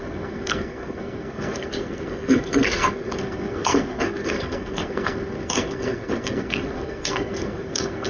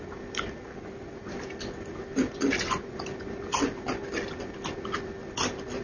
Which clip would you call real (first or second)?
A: second